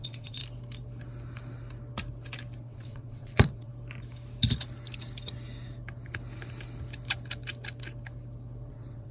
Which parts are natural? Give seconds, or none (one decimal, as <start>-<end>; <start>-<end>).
0.4-2.6; 3.7-8.7